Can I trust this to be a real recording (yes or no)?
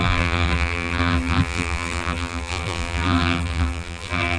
no